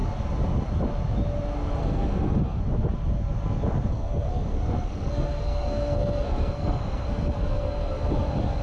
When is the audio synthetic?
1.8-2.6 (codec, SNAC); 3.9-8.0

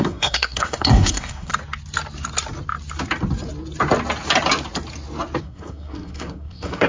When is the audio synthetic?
0.0-1.5 (codec, SNAC); 5.4-6.9

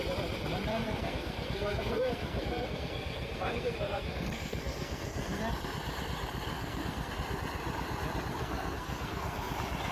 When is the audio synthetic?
0.7-5.4 (codec, SNAC); 6.5-7.1; 8.3-9.5

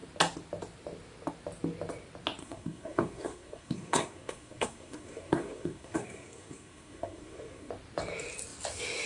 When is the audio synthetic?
2.4-7.7 (codec, SNAC)